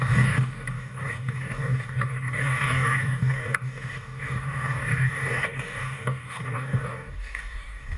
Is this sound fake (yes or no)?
yes